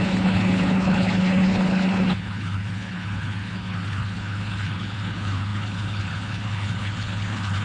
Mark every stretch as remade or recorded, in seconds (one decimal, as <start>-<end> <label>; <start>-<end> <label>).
0.0-7.6 remade